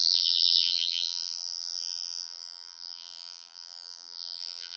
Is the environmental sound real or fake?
fake